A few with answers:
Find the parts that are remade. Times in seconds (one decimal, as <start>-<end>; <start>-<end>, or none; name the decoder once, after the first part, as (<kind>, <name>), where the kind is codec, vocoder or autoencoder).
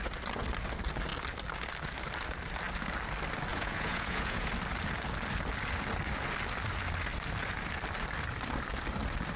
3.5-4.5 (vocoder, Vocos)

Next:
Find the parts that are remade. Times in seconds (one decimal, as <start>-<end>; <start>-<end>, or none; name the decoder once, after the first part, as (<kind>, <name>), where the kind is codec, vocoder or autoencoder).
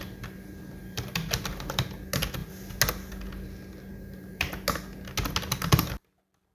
0.8-1.8 (vocoder, BigVGAN v2); 3.9-4.5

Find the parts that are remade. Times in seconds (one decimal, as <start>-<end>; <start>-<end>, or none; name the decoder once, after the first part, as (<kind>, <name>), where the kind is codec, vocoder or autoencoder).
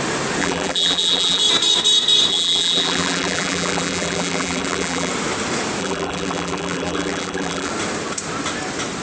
0.4-1.4 (vocoder, BigVGAN v2); 2.3-5.1; 5.8-7.7